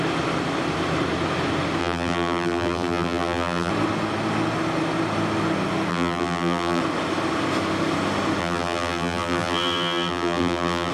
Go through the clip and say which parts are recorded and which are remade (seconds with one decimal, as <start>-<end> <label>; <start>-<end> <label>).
0.0-1.8 recorded; 1.8-3.7 remade; 3.7-5.9 recorded; 5.9-6.8 remade; 6.8-8.4 recorded; 8.4-10.9 remade